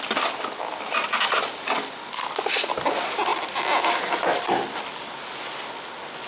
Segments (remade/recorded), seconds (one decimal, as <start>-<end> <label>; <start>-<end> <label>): 0.0-6.3 recorded